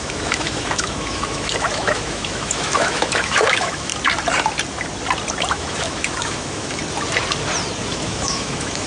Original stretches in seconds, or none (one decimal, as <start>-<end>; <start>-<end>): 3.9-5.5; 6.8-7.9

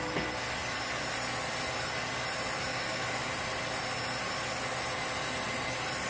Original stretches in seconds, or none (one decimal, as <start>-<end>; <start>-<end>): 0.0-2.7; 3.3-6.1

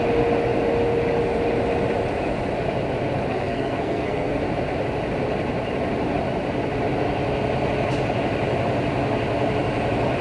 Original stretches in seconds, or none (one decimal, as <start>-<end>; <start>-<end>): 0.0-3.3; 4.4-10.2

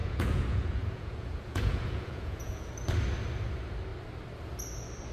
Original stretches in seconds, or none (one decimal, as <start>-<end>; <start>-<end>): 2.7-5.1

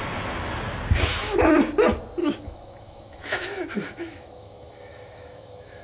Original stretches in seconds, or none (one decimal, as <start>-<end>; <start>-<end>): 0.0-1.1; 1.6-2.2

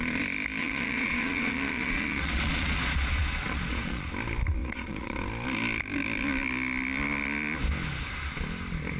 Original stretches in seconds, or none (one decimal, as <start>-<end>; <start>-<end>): 0.0-0.6; 4.1-4.6; 5.2-9.0